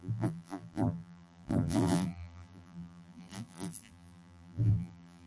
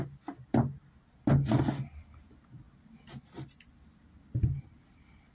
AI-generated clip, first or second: first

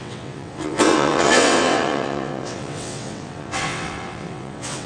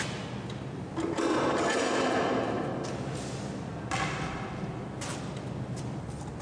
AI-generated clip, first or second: first